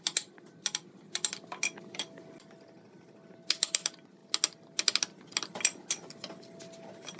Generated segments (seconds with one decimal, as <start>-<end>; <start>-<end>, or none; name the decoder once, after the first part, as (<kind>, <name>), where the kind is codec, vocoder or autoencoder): none